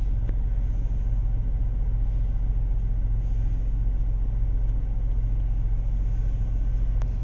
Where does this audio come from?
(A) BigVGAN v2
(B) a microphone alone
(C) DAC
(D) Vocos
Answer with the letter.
B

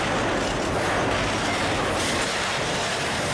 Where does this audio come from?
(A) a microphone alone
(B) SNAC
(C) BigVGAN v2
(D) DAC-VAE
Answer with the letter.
A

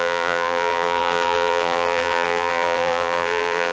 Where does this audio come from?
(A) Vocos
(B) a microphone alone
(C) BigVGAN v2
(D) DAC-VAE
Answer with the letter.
C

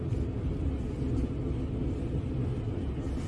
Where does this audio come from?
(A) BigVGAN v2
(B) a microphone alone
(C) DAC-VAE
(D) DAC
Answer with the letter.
B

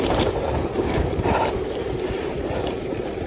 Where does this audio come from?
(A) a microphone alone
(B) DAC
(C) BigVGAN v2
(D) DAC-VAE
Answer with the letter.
C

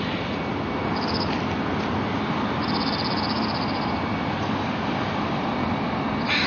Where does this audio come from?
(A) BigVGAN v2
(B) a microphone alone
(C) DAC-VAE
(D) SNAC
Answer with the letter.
A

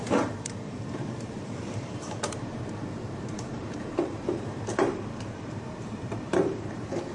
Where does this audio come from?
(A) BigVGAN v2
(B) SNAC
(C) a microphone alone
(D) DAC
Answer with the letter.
A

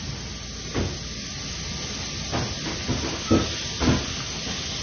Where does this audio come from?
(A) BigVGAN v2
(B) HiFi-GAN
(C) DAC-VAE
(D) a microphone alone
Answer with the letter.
D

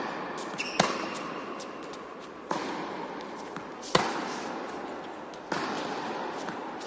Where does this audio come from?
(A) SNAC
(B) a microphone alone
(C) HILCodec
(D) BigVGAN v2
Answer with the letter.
B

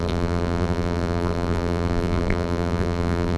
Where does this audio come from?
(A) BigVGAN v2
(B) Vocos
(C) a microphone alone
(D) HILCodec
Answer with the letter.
A